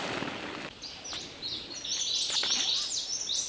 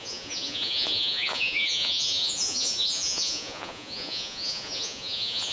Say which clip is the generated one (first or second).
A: second